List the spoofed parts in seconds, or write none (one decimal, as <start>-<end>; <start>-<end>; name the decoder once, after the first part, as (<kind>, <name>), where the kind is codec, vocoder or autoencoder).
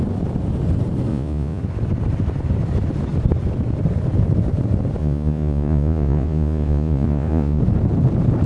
1.1-1.6 (vocoder, Vocos); 5.0-7.6